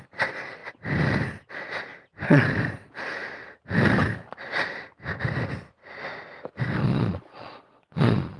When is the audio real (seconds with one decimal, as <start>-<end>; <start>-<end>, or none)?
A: 0.0-6.8